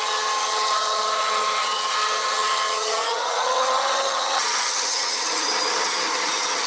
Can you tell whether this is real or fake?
fake